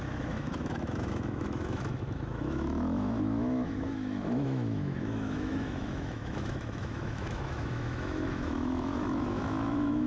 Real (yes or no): no